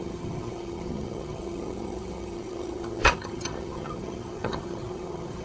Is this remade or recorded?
remade